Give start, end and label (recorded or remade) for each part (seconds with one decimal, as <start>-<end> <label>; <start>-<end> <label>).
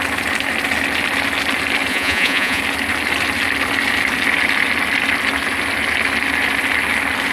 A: 0.0-1.9 recorded; 1.9-2.6 remade; 2.6-7.3 recorded